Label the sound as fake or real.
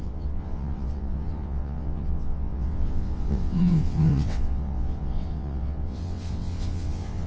fake